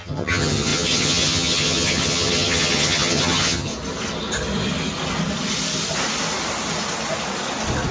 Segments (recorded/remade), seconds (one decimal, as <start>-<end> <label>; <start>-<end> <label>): 0.0-3.7 remade; 3.7-7.9 recorded